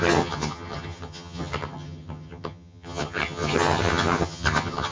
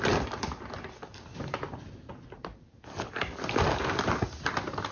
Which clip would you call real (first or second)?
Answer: second